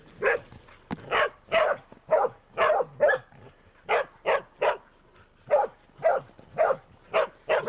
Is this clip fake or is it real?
real